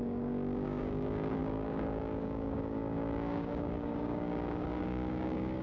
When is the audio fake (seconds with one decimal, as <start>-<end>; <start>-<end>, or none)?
0.0-5.6

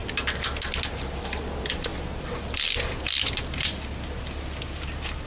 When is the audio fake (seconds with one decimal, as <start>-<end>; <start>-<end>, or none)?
none

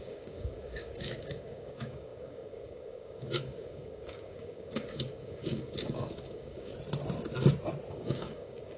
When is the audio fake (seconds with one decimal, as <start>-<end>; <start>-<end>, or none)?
0.0-6.7; 7.9-8.8